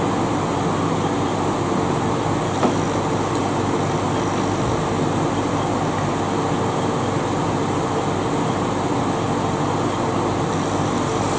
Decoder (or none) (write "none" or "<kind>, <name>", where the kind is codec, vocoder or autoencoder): none